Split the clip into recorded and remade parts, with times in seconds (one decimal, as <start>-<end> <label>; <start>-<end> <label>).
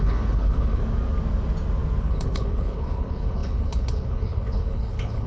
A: 0.0-0.8 remade; 0.8-2.0 recorded; 2.0-5.3 remade